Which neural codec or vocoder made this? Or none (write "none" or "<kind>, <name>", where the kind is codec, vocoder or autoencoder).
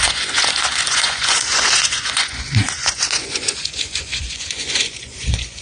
vocoder, Vocos